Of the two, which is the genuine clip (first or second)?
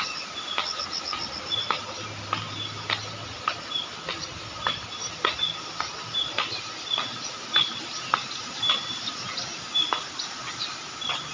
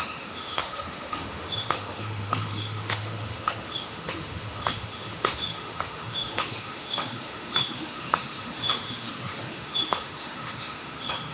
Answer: first